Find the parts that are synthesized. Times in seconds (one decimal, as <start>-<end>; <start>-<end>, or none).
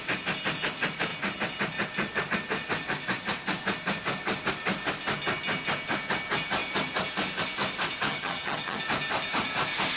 8.1-8.8